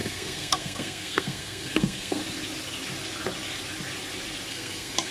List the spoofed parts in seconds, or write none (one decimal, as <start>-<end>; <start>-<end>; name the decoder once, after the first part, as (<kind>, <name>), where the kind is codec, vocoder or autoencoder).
0.0-2.2 (codec, SNAC); 4.5-5.1